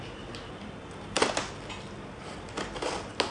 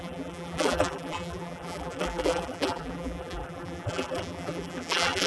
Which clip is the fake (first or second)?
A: second